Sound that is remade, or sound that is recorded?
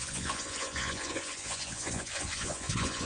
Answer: remade